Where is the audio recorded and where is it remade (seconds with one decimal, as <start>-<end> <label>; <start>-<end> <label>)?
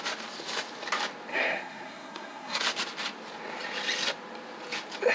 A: 0.0-1.3 recorded; 1.3-2.6 remade; 2.6-5.1 recorded